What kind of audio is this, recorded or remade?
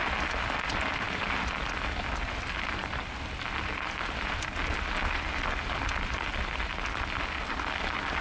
recorded